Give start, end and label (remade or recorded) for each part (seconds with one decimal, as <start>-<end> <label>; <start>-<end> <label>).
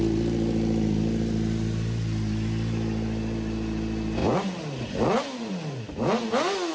0.0-6.7 recorded